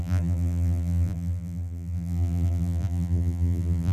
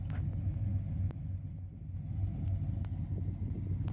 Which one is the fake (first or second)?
first